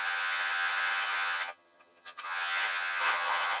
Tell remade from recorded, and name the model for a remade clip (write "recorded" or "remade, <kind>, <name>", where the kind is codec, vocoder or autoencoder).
remade, vocoder, HiFi-GAN